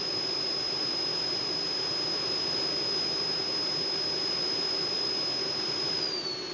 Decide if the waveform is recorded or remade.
recorded